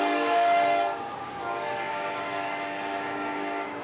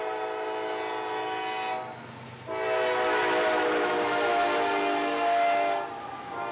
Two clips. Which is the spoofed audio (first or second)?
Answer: first